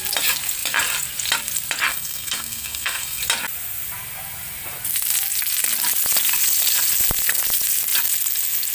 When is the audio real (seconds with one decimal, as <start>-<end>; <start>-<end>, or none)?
0.0-1.9; 3.2-8.7